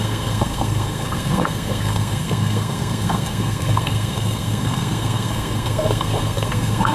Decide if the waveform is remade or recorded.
remade